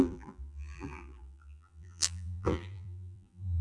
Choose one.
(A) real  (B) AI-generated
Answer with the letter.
B